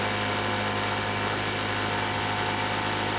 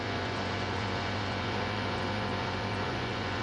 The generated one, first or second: second